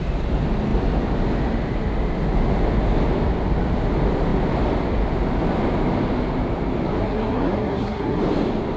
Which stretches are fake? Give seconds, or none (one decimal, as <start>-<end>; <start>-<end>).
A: 7.0-8.2